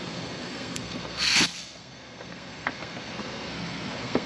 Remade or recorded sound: remade